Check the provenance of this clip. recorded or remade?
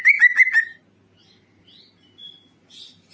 recorded